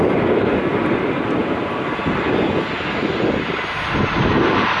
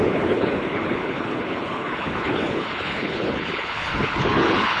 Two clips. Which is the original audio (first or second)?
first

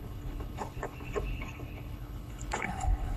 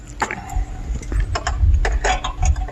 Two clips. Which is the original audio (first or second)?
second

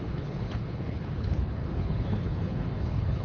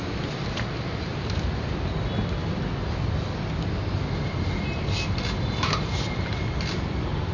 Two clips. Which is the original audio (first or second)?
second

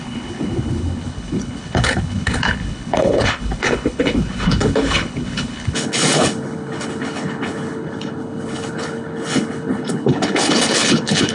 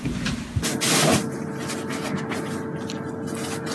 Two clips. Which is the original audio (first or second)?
second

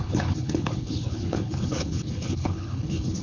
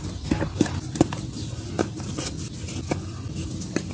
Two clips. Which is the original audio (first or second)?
second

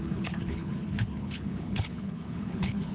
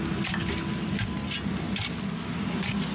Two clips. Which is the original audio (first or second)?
second